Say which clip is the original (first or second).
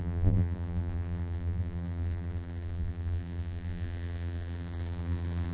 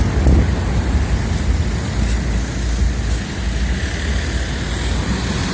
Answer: second